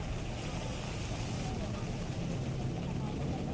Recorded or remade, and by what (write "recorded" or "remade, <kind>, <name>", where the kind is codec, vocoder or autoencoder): recorded